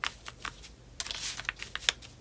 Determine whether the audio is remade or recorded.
recorded